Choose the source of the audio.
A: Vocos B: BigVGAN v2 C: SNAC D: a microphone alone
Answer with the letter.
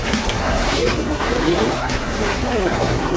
C